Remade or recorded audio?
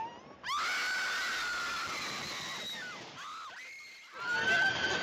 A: recorded